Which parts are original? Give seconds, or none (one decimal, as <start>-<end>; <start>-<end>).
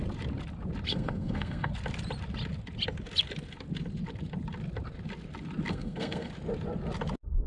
0.0-0.9; 1.7-5.7; 6.3-7.5